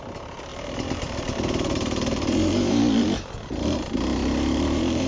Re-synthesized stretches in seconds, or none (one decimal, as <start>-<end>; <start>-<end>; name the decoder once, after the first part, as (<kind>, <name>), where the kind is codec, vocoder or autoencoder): 0.5-2.8 (vocoder, BigVGAN v2); 4.2-5.1